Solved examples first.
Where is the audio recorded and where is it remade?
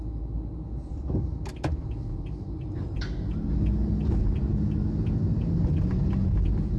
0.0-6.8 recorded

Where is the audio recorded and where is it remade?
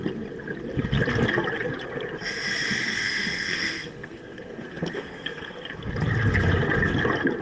0.0-2.8 recorded; 2.8-5.5 remade; 5.5-7.4 recorded